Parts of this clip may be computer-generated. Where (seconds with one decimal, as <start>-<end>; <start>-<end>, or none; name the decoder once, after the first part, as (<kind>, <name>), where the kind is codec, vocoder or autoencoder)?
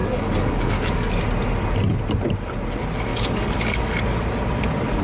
0.0-1.1 (codec, DAC); 3.1-4.0